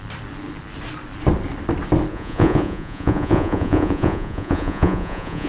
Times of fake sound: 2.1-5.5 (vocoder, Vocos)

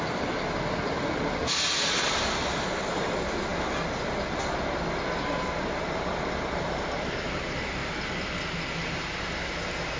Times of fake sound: none

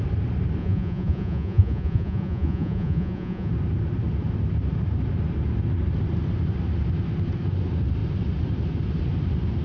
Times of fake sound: 0.6-3.5 (vocoder, Vocos)